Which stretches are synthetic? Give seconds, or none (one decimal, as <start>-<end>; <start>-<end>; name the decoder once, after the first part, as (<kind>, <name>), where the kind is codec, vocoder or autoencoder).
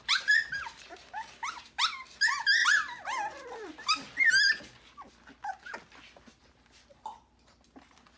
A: none